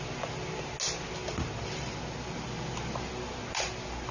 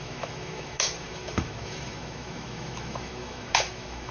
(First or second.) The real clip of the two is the first